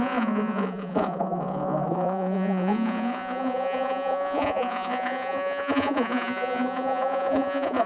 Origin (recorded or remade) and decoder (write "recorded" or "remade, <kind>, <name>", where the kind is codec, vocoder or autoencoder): remade, vocoder, Vocos